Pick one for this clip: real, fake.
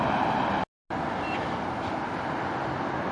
real